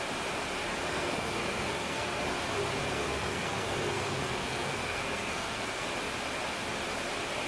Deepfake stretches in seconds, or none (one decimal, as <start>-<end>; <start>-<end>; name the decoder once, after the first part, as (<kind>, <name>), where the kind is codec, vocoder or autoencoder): 0.9-2.2 (codec, SNAC); 2.8-5.9